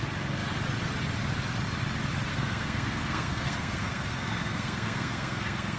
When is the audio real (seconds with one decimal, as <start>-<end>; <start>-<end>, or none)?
0.0-2.3